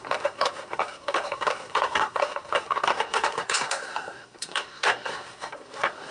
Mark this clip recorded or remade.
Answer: remade